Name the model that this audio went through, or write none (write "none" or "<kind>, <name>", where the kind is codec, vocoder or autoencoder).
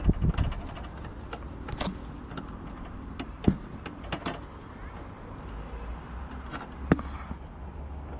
none